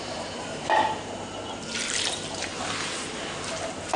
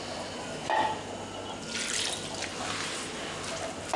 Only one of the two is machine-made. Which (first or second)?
first